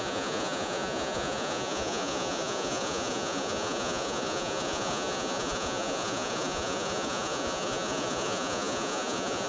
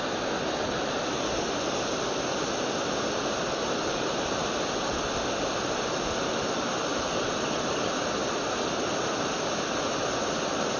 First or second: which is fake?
first